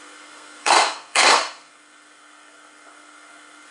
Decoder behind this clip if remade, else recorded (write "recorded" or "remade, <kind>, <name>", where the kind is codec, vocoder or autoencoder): remade, codec, SNAC